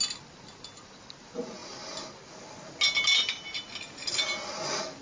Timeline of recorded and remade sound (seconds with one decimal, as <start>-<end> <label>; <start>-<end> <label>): 0.0-5.0 recorded